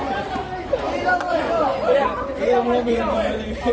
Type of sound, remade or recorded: remade